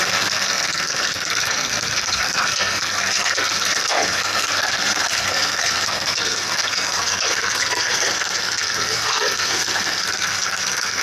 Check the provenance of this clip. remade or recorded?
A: remade